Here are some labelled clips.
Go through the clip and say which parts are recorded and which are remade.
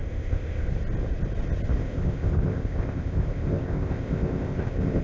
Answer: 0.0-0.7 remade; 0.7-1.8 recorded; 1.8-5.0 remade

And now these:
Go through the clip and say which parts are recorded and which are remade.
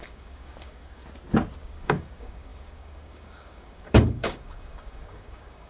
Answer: 0.0-1.0 remade; 1.0-1.6 recorded; 1.6-5.7 remade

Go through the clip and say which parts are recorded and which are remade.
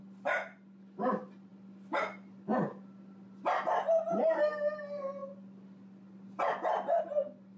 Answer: 0.0-7.6 recorded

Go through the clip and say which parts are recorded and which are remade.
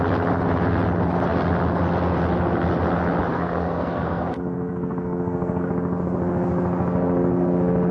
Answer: 0.0-3.3 recorded; 3.3-5.7 remade; 5.7-7.9 recorded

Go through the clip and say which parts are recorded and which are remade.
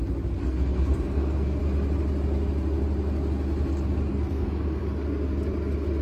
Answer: 0.0-0.4 recorded; 0.4-1.6 remade; 1.6-4.1 recorded; 4.1-4.8 remade; 4.8-6.0 recorded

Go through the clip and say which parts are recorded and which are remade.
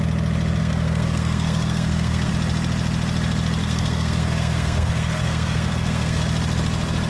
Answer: 0.0-0.6 recorded; 0.6-2.3 remade; 2.3-3.6 recorded; 3.6-6.2 remade; 6.2-7.1 recorded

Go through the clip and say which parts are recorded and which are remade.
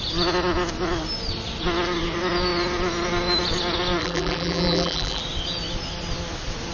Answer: 0.0-4.0 recorded; 4.0-5.2 remade; 5.2-6.7 recorded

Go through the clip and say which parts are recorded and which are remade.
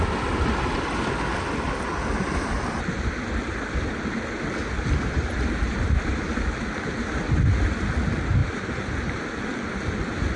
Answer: 0.0-8.4 recorded; 8.4-10.0 remade; 10.0-10.4 recorded